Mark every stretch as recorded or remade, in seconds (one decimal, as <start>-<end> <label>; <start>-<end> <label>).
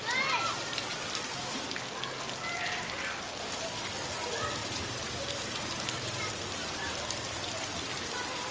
0.0-4.6 recorded; 4.6-6.3 remade; 6.3-8.5 recorded